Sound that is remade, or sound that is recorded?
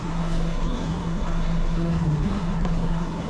remade